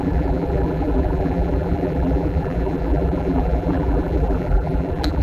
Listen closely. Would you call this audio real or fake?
fake